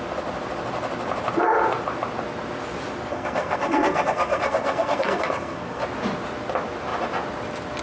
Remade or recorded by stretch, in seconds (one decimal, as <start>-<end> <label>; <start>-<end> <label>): 0.0-3.1 recorded; 3.1-5.8 remade; 5.8-7.8 recorded